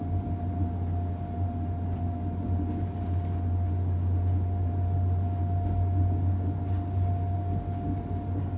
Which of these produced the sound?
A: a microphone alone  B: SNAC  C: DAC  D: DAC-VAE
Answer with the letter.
A